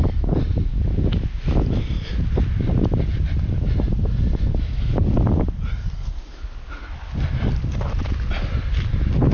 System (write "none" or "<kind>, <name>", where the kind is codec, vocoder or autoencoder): none